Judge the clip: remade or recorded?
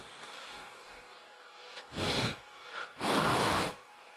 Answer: remade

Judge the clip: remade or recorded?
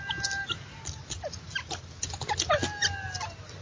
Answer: recorded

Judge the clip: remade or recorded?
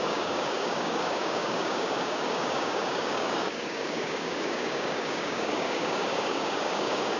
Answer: remade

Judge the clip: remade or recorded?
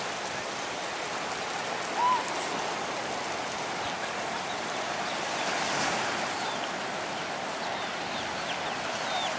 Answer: recorded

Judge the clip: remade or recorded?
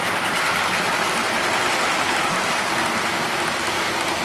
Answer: recorded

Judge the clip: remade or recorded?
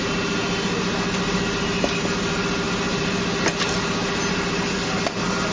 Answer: recorded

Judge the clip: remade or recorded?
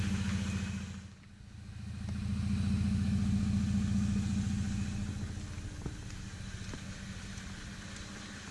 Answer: recorded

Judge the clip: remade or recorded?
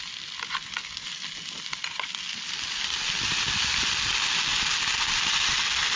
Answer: recorded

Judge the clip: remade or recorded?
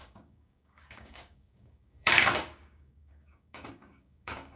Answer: remade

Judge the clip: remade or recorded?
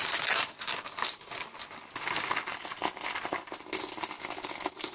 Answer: recorded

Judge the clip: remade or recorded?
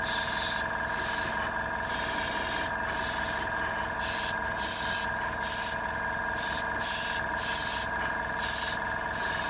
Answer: recorded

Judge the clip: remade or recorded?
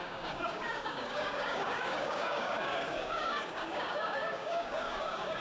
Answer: remade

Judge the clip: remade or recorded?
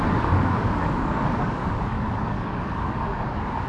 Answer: remade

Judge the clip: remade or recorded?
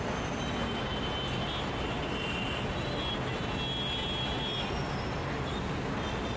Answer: recorded